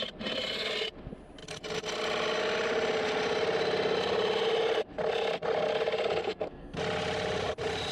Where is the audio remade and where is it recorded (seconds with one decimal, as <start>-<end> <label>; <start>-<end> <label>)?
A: 0.0-6.2 recorded; 6.2-6.8 remade; 6.8-7.9 recorded